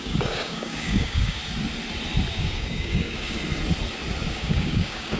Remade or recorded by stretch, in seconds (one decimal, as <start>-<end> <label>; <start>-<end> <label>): 0.0-1.4 remade; 1.4-2.3 recorded; 2.3-3.4 remade; 3.4-4.3 recorded; 4.3-5.2 remade